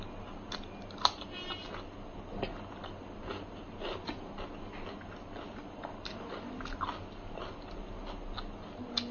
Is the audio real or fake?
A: real